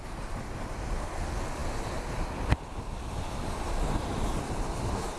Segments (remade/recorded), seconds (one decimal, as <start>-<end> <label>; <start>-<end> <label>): 0.0-5.2 recorded